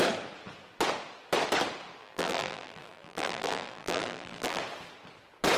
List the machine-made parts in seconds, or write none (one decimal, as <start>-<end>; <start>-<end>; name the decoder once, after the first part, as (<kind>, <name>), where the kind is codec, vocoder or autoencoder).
2.0-4.6 (vocoder, BigVGAN v2)